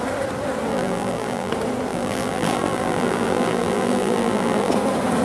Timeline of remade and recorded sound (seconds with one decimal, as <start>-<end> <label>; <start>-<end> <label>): 0.0-0.7 recorded; 0.7-1.5 remade; 1.5-1.9 recorded; 1.9-4.7 remade; 4.7-5.2 recorded